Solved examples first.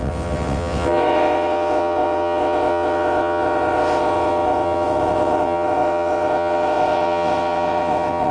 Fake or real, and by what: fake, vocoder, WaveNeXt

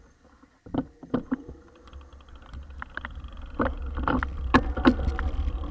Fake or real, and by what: real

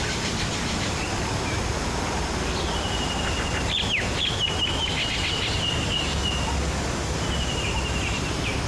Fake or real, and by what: real